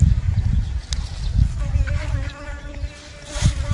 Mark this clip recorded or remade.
recorded